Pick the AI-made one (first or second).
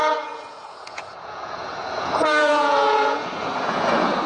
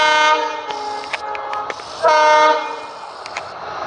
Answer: first